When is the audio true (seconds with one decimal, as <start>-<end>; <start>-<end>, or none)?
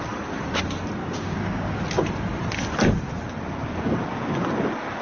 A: 0.0-1.0; 1.8-5.0